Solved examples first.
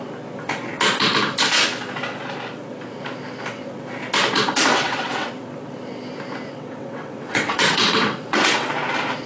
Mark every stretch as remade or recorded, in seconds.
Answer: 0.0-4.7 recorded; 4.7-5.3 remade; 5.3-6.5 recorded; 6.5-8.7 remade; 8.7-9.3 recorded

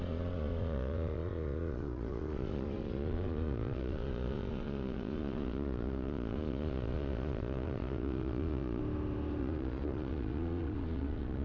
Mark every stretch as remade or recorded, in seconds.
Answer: 0.0-8.8 remade; 8.8-9.4 recorded; 9.4-11.4 remade

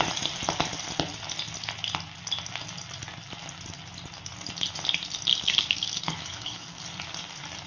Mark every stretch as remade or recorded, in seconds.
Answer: 0.0-5.3 recorded; 5.3-6.8 remade; 6.8-7.7 recorded

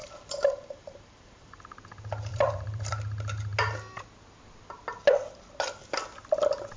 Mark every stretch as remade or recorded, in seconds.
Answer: 0.0-1.6 remade; 1.6-2.3 recorded; 2.3-2.9 remade; 2.9-6.8 recorded

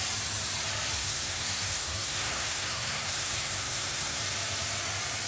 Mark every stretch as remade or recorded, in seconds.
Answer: 0.0-1.0 recorded; 1.0-4.2 remade; 4.2-5.3 recorded

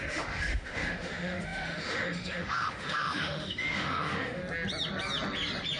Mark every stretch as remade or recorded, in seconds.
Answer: 0.0-4.4 remade; 4.4-5.8 recorded

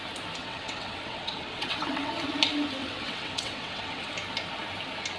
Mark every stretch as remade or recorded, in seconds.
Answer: 0.0-0.4 recorded; 0.4-2.1 remade; 2.1-2.8 recorded; 2.8-4.1 remade; 4.1-5.2 recorded